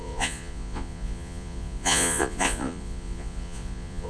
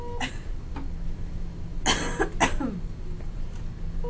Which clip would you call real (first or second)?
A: second